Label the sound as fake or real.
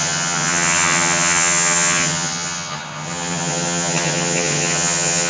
fake